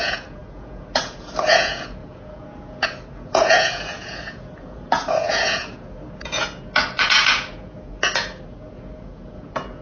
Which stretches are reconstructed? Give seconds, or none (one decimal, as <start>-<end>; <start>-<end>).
0.0-9.8